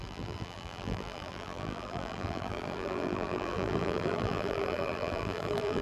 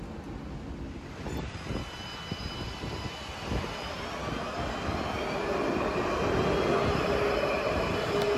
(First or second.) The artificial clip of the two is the first